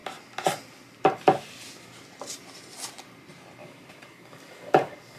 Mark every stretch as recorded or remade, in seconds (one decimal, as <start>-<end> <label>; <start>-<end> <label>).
0.0-3.6 recorded; 3.6-5.2 remade